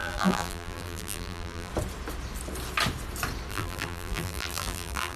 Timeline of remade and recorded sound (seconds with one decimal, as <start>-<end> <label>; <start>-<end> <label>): 0.0-1.7 remade; 1.7-3.5 recorded; 3.5-5.2 remade